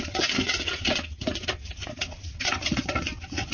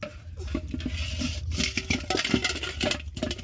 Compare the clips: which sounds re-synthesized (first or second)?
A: first